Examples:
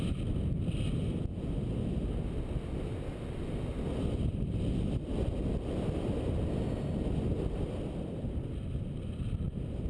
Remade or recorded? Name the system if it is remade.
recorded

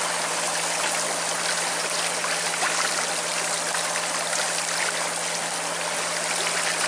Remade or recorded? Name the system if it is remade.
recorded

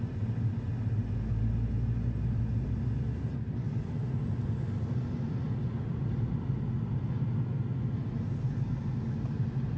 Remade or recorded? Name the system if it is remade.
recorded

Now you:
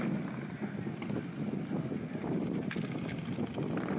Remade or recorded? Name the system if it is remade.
recorded